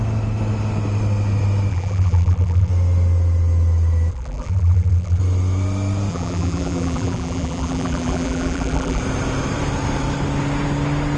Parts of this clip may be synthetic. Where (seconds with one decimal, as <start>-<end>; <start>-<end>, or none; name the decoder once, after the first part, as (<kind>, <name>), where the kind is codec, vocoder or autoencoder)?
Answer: 1.7-2.7 (vocoder, BigVGAN v2); 4.1-5.2; 6.1-9.0